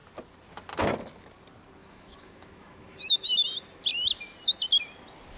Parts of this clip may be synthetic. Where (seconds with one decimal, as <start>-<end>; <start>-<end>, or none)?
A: 1.8-3.5

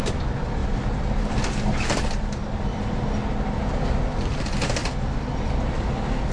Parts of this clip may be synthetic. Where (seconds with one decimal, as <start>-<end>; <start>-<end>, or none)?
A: none

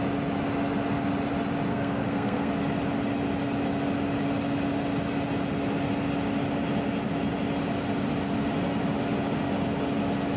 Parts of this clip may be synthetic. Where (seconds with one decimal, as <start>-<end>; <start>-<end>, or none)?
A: 1.7-2.5

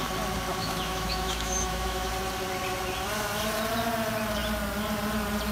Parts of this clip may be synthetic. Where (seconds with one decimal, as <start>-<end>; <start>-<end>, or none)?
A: 0.6-2.1

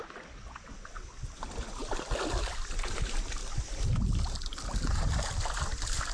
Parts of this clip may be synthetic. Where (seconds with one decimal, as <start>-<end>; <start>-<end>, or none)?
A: none

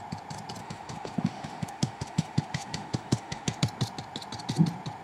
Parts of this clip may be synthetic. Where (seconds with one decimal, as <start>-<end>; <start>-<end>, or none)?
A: 0.6-3.6

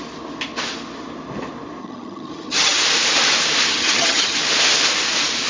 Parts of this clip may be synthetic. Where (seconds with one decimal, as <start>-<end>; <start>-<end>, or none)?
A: 1.8-2.8; 3.7-4.4